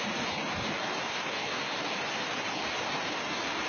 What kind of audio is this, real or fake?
real